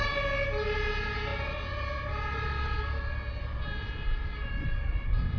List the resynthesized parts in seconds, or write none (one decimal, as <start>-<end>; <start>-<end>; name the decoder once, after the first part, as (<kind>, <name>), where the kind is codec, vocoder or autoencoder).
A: none